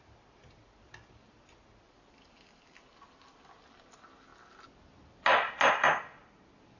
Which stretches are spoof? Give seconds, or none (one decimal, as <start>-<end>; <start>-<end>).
none

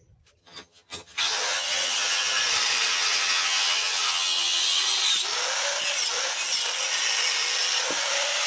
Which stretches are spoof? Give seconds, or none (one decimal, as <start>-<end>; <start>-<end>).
0.4-2.4; 2.9-4.8

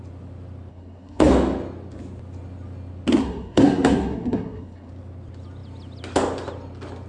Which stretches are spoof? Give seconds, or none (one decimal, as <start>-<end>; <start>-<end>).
0.7-1.3; 3.2-4.9

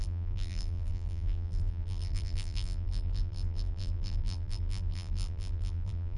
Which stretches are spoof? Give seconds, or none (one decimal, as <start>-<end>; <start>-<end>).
0.0-6.2

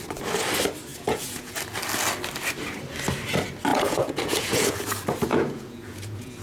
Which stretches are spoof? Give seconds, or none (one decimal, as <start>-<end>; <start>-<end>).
0.9-1.6; 3.7-4.7; 5.3-6.4

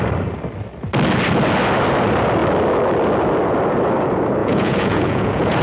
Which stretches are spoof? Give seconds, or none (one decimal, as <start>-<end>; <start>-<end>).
4.4-5.6